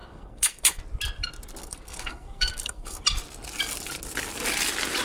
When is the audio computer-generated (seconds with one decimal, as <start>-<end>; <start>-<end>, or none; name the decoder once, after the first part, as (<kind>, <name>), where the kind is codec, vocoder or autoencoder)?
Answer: 0.0-0.8 (codec, SNAC); 1.6-3.0